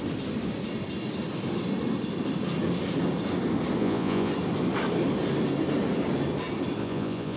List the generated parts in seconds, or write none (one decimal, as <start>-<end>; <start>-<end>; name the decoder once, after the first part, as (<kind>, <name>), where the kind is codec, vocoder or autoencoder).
3.8-4.3 (vocoder, Vocos); 6.8-7.4

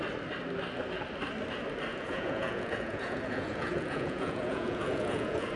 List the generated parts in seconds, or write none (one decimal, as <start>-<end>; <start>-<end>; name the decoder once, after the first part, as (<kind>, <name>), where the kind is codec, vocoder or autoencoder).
1.9-5.6 (vocoder, Vocos)

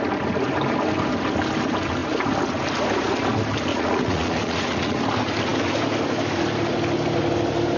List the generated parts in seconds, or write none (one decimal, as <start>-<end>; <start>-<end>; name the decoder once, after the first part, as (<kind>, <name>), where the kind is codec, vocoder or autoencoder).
3.7-5.0 (vocoder, Vocos)